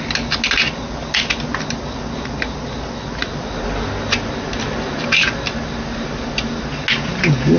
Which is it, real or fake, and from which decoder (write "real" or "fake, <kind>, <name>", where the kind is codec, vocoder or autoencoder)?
real